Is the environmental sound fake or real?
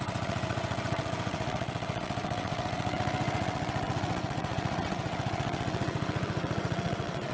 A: fake